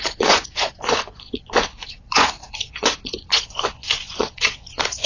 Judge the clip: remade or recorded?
remade